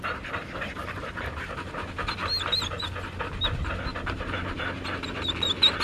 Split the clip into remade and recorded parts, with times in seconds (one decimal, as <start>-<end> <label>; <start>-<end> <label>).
0.0-3.9 recorded; 3.9-4.6 remade; 4.6-5.8 recorded